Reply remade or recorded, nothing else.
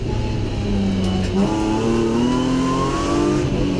recorded